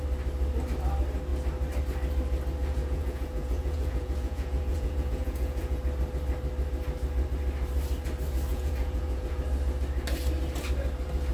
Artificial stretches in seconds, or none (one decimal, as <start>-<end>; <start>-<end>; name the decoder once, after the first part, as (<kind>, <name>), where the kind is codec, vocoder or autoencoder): 2.6-5.8 (vocoder, Vocos); 8.5-9.4